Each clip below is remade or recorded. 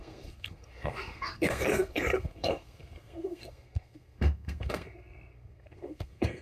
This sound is remade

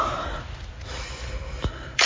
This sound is remade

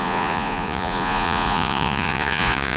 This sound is remade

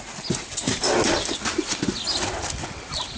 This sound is recorded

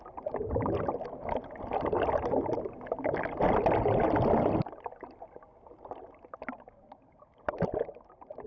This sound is recorded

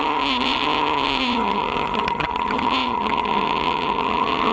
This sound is remade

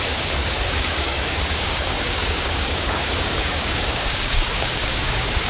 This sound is remade